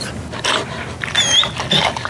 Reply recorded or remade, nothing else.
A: recorded